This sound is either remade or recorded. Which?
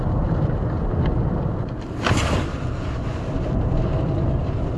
recorded